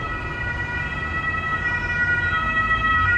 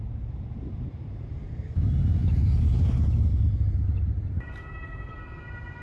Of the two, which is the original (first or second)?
first